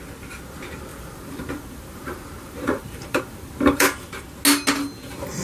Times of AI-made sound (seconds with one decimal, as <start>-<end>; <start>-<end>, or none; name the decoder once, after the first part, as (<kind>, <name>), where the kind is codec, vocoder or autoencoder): 0.9-4.1 (vocoder, BigVGAN v2)